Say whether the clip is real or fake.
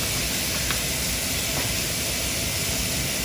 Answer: real